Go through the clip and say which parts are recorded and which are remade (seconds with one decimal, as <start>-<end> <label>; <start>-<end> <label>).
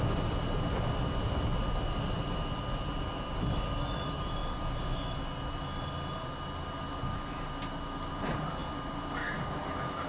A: 0.0-10.1 recorded